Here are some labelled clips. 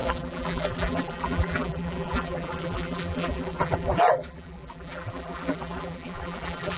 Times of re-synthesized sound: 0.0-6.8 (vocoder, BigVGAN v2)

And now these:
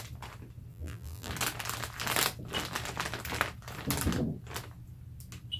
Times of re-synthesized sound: 0.7-1.3 (vocoder, BigVGAN v2)

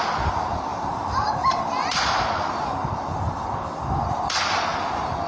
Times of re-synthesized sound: 0.7-1.6 (vocoder, BigVGAN v2)

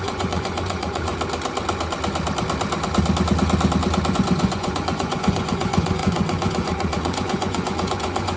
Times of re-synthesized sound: 0.0-1.1 (vocoder, Vocos); 4.1-8.4

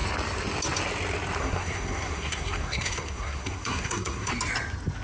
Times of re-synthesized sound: 1.4-4.3 (codec, SNAC)

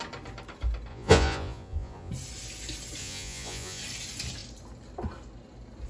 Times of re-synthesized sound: 0.9-2.1 (vocoder, Vocos); 3.0-3.8

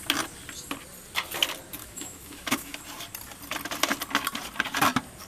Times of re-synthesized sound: 1.8-2.8 (autoencoder, DAC-VAE)

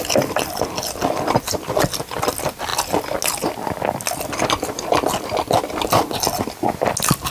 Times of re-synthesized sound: none